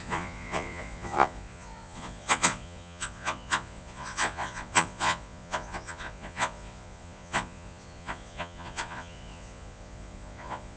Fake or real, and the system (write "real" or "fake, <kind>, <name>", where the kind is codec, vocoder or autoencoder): fake, vocoder, Vocos